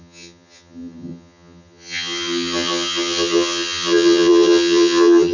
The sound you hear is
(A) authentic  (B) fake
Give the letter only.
B